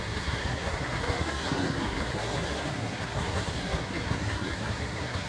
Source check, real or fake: fake